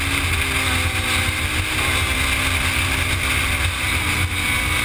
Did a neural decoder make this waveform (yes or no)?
no